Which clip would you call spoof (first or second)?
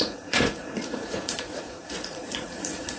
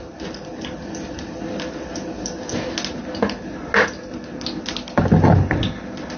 first